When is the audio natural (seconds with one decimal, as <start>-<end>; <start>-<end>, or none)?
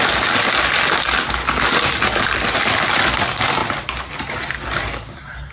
0.0-5.5